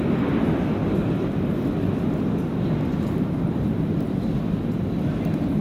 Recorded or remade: remade